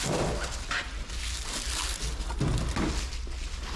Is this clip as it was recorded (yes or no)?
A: yes